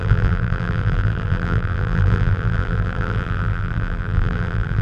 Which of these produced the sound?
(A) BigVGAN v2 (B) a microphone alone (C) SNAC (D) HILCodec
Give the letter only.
A